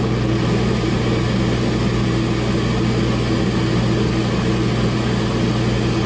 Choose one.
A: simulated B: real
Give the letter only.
B